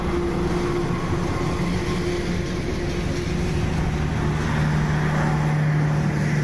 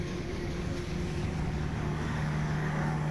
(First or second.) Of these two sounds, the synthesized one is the second